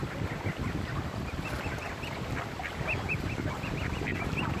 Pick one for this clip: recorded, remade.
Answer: recorded